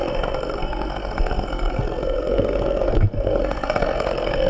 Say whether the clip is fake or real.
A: fake